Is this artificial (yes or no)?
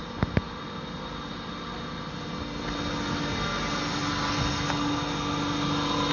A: no